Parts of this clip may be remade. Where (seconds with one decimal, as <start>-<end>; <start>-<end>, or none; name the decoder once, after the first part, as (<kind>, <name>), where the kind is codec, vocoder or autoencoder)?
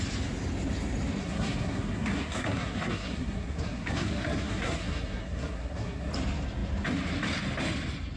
1.2-6.1 (codec, SNAC)